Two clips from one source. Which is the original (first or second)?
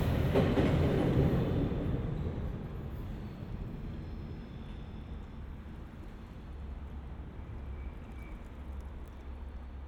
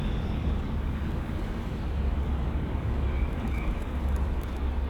first